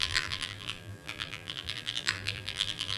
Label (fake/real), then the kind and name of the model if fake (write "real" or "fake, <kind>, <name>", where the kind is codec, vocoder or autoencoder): fake, vocoder, BigVGAN v2